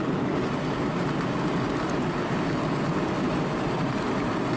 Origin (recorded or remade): recorded